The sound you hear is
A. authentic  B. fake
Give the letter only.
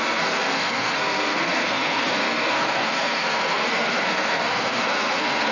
B